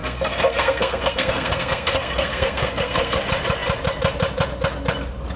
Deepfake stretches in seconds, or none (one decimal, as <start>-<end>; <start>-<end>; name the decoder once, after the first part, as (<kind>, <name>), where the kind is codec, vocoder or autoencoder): 0.0-3.2 (codec, SNAC)